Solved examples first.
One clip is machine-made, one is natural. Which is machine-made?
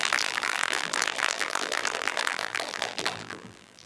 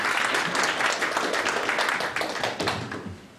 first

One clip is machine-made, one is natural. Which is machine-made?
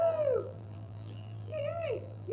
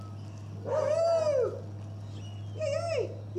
first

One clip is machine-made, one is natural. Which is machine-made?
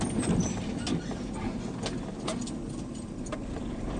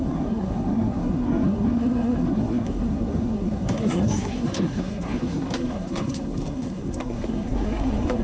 second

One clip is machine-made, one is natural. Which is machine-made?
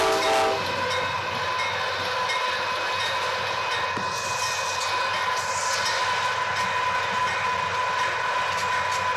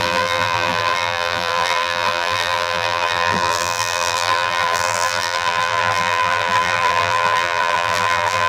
second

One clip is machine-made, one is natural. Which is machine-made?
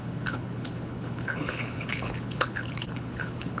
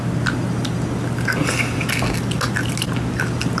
first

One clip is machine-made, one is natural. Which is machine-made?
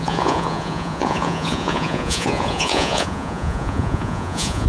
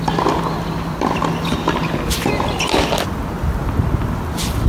first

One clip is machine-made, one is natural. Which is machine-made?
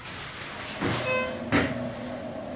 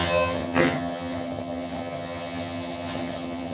second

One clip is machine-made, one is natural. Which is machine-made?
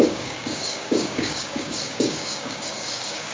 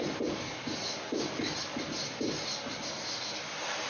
first